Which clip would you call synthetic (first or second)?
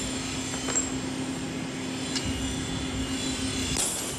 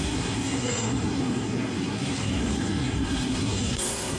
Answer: second